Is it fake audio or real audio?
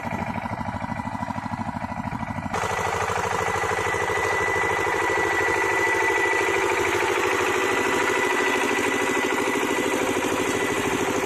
real